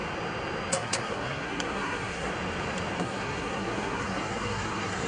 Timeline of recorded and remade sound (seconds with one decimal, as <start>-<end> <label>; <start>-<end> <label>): 0.0-0.7 recorded; 0.7-2.3 remade; 2.3-3.0 recorded; 3.0-5.1 remade